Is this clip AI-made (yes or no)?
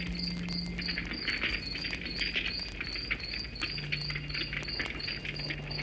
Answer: no